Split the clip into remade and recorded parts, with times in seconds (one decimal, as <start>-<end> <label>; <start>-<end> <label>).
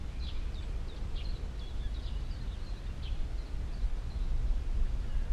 0.0-3.2 remade; 3.2-5.3 recorded